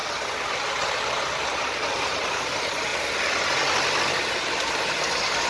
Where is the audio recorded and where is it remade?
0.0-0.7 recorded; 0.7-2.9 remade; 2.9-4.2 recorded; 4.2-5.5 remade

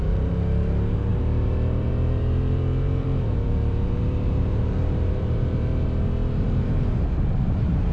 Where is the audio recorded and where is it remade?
0.0-5.7 remade; 5.7-6.4 recorded; 6.4-7.9 remade

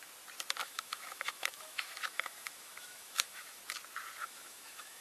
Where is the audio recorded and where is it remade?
0.0-0.6 recorded; 0.6-3.6 remade; 3.6-4.2 recorded; 4.2-5.0 remade

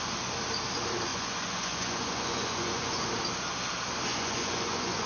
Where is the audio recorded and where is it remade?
0.0-1.1 recorded; 1.1-3.1 remade; 3.1-4.1 recorded; 4.1-5.1 remade

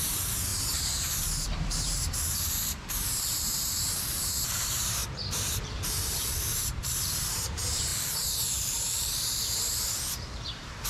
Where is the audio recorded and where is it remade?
0.0-5.0 remade; 5.0-5.6 recorded; 5.6-10.9 remade

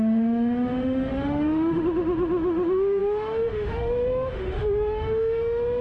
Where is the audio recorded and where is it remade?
0.0-5.8 remade